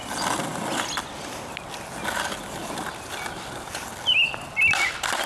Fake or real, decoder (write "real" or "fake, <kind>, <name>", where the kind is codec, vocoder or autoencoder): real